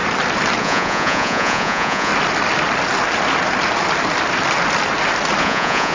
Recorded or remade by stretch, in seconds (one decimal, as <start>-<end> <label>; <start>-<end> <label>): 0.0-0.6 recorded; 0.6-2.1 remade; 2.1-5.4 recorded; 5.4-5.9 remade